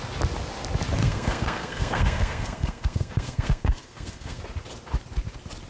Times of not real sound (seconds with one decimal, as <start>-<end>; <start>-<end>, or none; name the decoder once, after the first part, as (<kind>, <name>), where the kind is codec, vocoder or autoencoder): 1.0-4.4 (codec, SNAC)